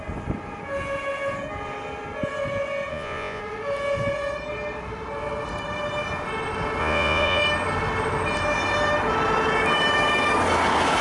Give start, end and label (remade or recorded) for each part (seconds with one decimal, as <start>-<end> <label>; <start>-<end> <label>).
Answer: 0.0-2.9 recorded; 2.9-3.4 remade; 3.4-6.8 recorded; 6.8-7.4 remade; 7.4-11.0 recorded